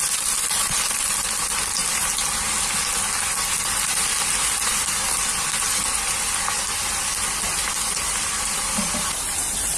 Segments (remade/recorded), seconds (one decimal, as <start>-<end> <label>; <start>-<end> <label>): 0.0-9.8 recorded